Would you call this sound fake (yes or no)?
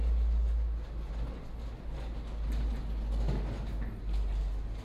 no